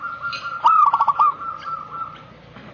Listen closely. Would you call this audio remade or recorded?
recorded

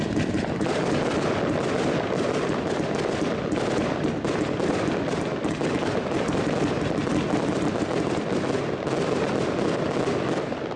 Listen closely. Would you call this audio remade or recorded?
recorded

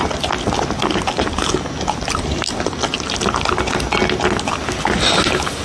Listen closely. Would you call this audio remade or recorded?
recorded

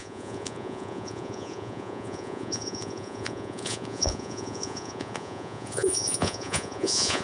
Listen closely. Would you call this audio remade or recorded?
remade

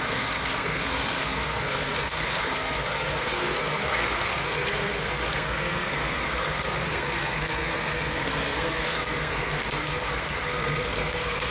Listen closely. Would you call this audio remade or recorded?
remade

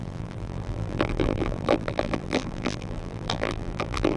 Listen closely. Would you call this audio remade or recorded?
remade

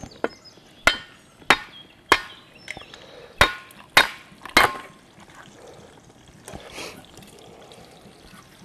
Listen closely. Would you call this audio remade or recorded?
recorded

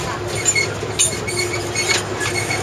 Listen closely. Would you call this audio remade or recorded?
recorded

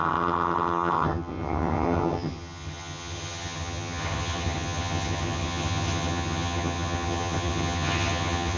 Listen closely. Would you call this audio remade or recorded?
remade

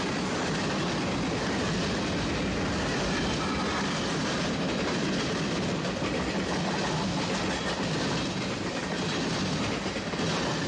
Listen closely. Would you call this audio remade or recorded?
recorded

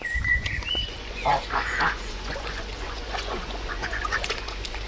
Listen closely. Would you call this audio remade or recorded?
remade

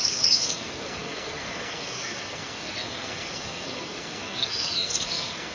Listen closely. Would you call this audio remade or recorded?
remade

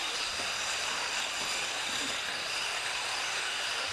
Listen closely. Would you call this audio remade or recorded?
recorded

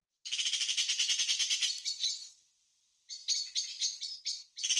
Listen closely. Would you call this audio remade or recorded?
recorded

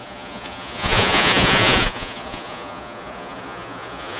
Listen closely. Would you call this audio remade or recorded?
remade